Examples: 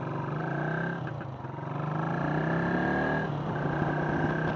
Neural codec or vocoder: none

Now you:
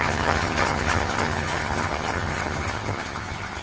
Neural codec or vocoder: vocoder, HiFi-GAN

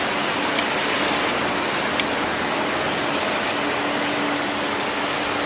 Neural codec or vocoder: none